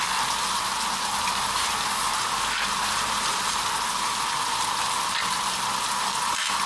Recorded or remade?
recorded